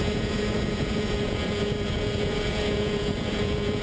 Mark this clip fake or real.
fake